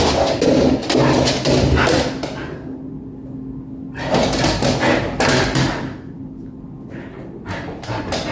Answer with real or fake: real